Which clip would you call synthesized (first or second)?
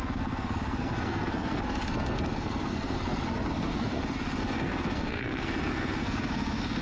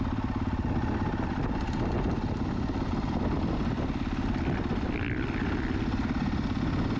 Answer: first